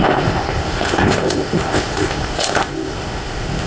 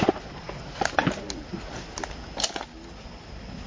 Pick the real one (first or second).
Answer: second